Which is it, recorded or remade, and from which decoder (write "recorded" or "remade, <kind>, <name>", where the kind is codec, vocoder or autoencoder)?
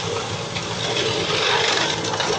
remade, vocoder, BigVGAN v2